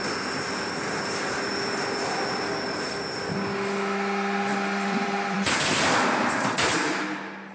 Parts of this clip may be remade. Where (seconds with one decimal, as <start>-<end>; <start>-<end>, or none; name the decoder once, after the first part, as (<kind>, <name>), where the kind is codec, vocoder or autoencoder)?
4.5-6.5 (vocoder, BigVGAN v2)